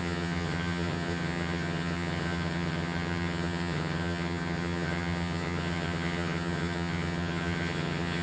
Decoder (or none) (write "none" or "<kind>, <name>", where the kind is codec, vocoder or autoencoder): vocoder, HiFi-GAN